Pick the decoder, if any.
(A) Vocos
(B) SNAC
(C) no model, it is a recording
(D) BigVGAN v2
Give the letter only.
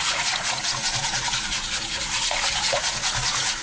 A